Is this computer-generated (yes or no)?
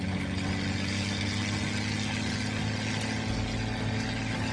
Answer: no